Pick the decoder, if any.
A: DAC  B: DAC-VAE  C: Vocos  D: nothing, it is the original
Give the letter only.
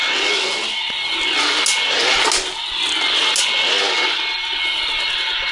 D